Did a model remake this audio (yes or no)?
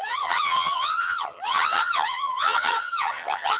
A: yes